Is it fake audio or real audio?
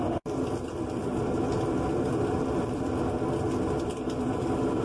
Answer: fake